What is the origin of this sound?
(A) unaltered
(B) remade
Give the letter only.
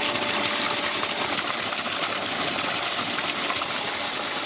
A